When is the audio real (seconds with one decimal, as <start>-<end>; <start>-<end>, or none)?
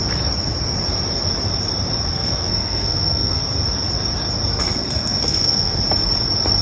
0.0-2.1; 3.4-4.5; 5.8-6.6